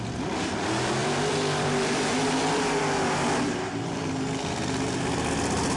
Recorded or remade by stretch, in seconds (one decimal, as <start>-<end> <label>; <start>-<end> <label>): 0.0-1.0 recorded; 1.0-2.8 remade; 2.8-5.8 recorded